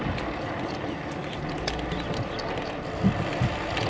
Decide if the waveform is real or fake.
real